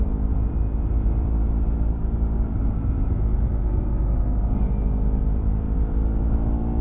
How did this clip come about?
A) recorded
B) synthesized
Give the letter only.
A